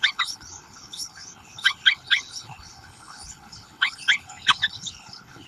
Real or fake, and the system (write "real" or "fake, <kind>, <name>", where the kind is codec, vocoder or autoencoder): fake, codec, HILCodec